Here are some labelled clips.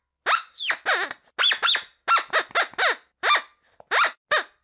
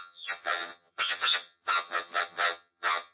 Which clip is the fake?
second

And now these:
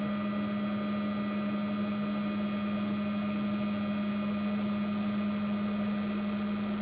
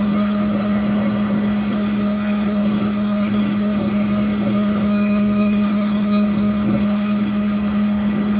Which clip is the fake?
second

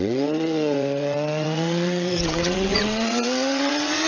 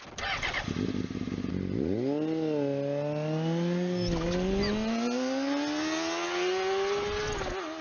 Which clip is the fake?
first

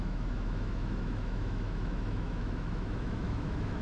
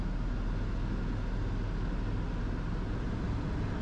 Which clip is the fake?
first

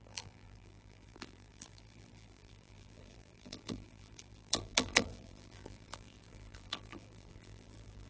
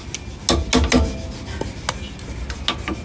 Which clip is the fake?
first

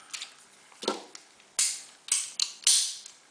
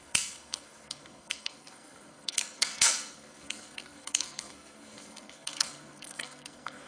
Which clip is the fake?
second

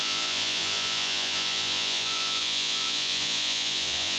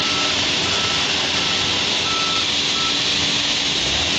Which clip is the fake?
first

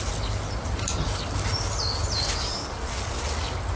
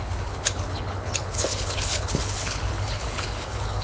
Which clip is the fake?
second